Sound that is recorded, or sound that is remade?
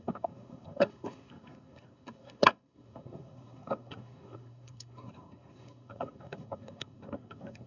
remade